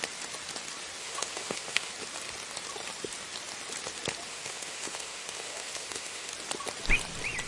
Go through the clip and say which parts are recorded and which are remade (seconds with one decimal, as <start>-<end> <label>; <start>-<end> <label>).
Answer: 0.0-1.0 recorded; 1.0-1.9 remade; 1.9-4.3 recorded; 4.3-6.3 remade; 6.3-7.5 recorded